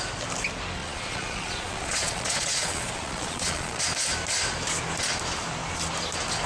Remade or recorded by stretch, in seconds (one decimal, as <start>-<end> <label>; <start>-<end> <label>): 0.0-0.8 recorded; 0.8-3.8 remade; 3.8-6.5 recorded